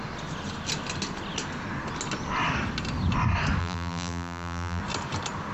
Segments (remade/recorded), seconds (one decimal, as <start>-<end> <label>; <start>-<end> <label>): 0.0-3.6 recorded; 3.6-4.8 remade; 4.8-5.5 recorded